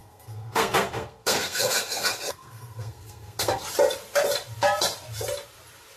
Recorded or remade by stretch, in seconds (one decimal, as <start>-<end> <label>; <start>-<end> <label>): 0.0-3.6 remade; 3.6-6.0 recorded